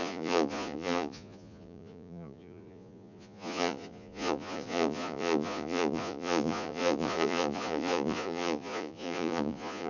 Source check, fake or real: fake